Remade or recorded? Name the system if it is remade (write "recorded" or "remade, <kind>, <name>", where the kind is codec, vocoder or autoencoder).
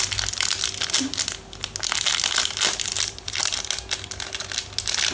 recorded